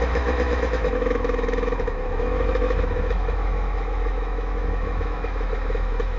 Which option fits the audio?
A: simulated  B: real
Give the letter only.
A